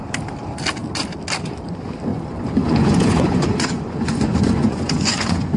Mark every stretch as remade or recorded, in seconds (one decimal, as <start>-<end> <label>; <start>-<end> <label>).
0.0-2.1 recorded; 2.1-5.6 remade